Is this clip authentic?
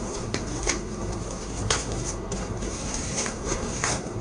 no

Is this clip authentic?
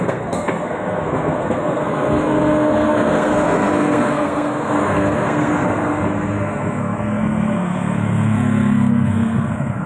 no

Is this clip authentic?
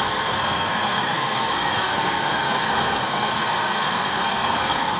no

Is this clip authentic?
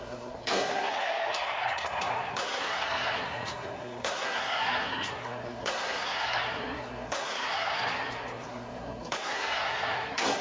no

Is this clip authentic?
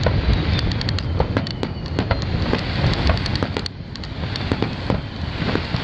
yes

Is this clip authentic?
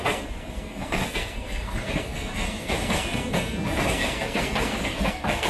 no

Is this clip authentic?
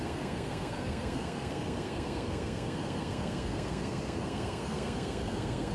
no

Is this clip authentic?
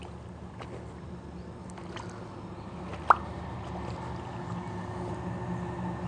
yes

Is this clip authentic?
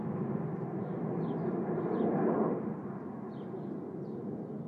yes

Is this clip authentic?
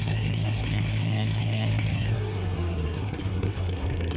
no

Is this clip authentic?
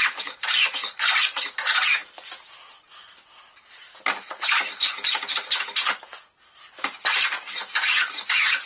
yes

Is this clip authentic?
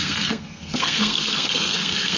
no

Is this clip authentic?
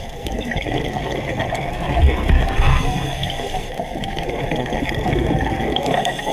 no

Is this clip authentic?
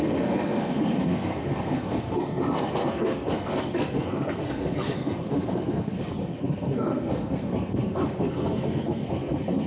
no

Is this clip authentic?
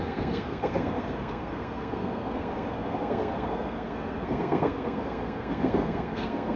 no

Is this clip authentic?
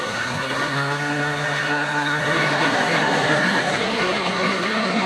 no